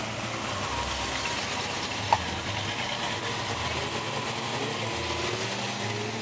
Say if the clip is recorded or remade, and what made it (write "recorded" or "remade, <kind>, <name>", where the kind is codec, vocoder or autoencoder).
recorded